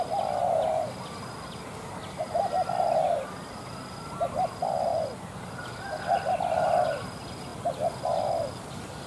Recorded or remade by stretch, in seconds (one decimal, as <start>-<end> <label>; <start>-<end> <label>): 0.0-9.1 recorded